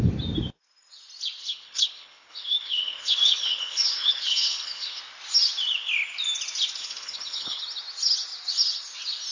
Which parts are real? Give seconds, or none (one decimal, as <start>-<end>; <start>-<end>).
0.0-1.4; 5.0-6.8; 7.6-9.3